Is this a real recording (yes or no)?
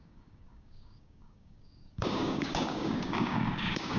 no